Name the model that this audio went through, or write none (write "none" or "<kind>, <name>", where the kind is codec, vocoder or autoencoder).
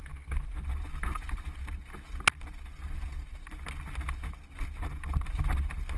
none